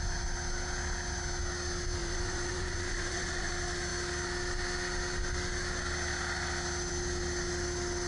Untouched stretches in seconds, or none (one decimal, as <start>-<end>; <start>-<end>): 0.0-2.0; 3.5-8.1